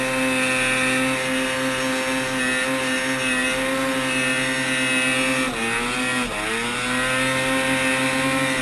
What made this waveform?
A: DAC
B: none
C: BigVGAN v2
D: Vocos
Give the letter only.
B